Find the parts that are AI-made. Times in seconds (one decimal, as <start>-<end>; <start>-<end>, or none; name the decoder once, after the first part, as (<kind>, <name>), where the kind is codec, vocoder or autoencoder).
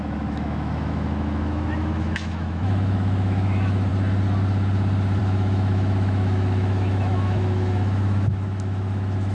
0.0-3.9 (autoencoder, DAC-VAE); 5.2-9.3